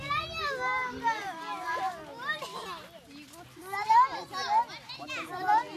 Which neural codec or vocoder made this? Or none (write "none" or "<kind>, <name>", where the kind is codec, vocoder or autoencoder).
none